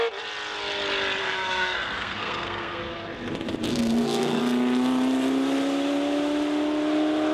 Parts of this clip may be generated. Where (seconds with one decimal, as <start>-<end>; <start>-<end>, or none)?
1.2-2.8; 3.7-4.4